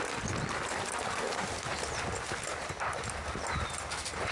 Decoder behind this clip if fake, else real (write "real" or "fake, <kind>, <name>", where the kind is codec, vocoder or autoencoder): real